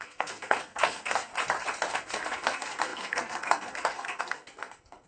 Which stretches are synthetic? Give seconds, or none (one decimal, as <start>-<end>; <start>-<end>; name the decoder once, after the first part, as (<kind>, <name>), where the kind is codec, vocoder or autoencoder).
0.0-1.3 (codec, SNAC); 1.9-5.1